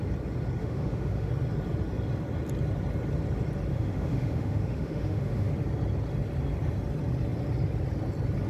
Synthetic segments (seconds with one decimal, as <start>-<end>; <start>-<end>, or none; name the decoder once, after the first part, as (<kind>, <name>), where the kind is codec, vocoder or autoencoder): 0.6-1.3 (autoencoder, DAC-VAE); 3.7-5.5